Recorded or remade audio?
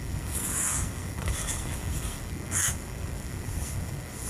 remade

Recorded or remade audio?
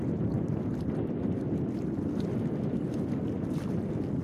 recorded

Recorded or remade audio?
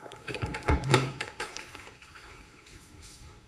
remade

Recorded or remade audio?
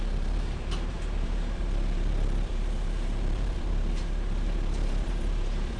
remade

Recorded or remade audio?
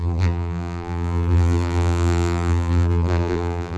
remade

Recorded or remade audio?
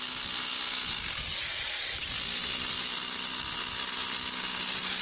recorded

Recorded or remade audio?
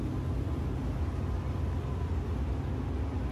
recorded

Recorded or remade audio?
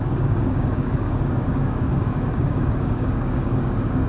remade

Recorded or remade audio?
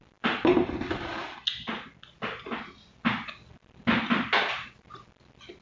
recorded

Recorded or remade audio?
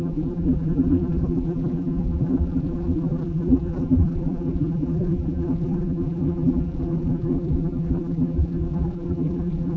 remade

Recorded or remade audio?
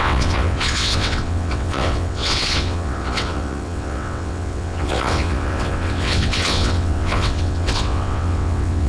remade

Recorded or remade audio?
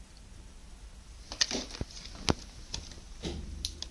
recorded